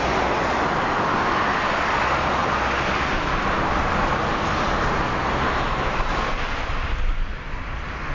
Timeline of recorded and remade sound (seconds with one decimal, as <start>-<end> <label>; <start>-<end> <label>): 0.0-8.1 recorded